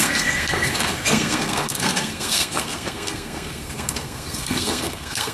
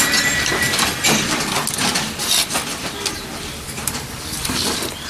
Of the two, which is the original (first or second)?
second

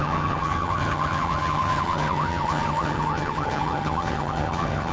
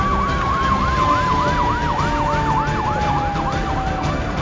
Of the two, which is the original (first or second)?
second